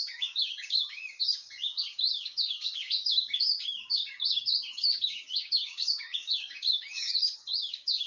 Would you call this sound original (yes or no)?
no